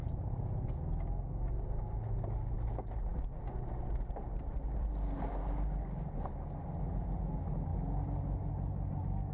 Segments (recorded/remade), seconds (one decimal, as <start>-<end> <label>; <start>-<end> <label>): 0.0-9.3 recorded